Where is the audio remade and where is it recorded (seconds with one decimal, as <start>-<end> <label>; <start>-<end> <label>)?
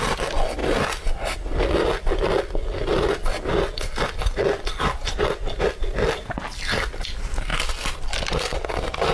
0.0-9.1 recorded